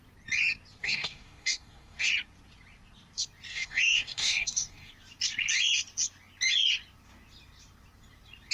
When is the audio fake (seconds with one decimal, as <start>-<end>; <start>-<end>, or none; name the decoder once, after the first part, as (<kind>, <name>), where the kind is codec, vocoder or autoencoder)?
0.8-2.1 (codec, DAC); 3.5-4.9